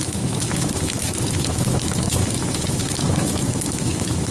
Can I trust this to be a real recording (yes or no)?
no